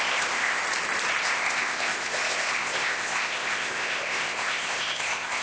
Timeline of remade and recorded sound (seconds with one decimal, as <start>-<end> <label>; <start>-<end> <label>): 0.0-0.6 remade; 0.6-1.2 recorded; 1.2-5.4 remade